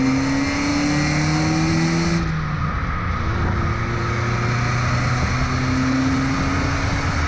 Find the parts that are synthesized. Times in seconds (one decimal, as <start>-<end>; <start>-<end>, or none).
none

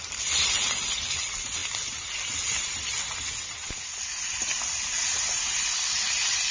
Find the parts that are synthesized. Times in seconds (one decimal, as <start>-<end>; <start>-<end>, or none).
none

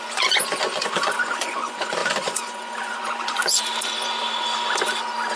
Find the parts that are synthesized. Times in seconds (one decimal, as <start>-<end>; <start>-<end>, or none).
0.0-3.7

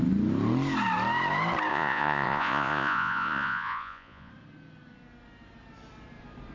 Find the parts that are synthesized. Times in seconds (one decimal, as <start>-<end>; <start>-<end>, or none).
1.7-4.3

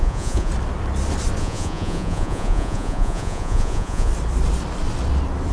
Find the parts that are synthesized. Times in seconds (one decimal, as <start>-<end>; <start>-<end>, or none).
0.0-0.5; 1.4-4.1

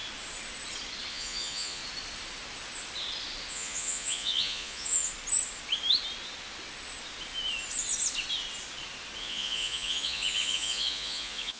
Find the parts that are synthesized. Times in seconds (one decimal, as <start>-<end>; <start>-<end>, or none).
1.1-1.8; 3.5-5.1; 9.2-11.6